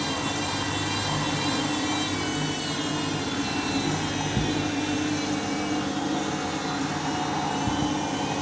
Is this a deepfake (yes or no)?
no